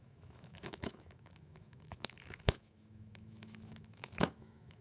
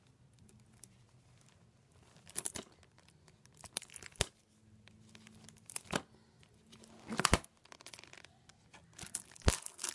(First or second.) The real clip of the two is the second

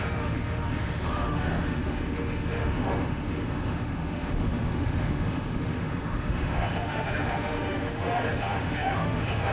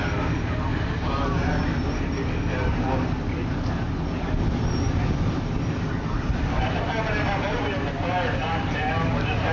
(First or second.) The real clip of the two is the second